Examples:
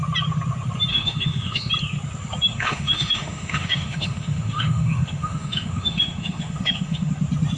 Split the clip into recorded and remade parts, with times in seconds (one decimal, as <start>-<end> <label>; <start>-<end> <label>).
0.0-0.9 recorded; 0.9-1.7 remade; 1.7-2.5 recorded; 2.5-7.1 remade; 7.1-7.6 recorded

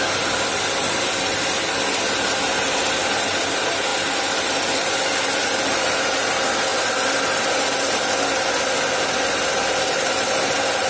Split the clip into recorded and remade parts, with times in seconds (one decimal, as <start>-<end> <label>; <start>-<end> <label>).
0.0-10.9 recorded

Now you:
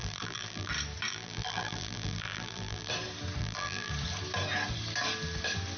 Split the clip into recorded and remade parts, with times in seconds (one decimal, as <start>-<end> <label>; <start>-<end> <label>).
0.0-0.7 remade; 0.7-1.1 recorded; 1.1-2.9 remade; 2.9-3.4 recorded; 3.4-3.9 remade; 3.9-5.8 recorded